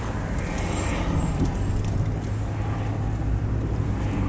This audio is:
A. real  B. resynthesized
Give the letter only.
A